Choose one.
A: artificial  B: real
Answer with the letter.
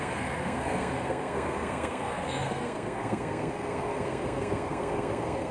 A